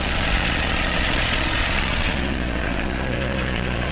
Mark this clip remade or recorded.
remade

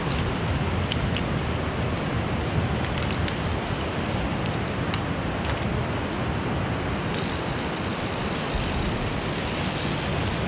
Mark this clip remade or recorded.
recorded